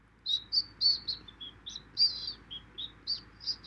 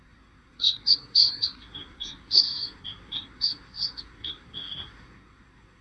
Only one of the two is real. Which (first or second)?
first